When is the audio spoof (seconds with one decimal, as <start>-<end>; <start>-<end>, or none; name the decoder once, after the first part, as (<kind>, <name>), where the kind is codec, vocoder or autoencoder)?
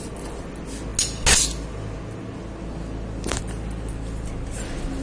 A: none